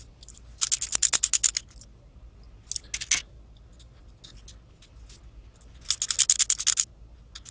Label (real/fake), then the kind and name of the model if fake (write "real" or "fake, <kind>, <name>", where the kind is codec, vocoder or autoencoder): real